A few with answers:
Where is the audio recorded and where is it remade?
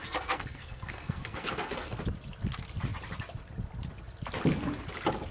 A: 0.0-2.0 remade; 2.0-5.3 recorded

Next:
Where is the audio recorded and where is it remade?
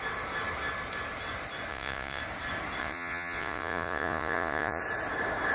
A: 0.0-1.7 recorded; 1.7-2.2 remade; 2.2-2.8 recorded; 2.8-4.8 remade; 4.8-5.5 recorded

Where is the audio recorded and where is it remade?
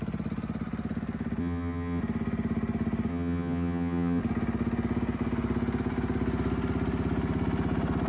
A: 0.0-1.4 recorded; 1.4-2.0 remade; 2.0-3.1 recorded; 3.1-4.2 remade; 4.2-8.1 recorded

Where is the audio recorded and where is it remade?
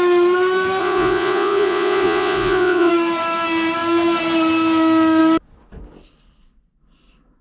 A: 0.0-0.8 recorded; 0.8-2.9 remade; 2.9-7.4 recorded